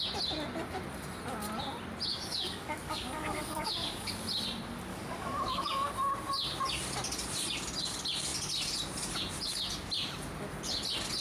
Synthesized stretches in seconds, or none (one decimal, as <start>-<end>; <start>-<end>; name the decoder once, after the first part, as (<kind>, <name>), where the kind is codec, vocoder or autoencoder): 2.1-4.1 (codec, DAC); 4.9-5.9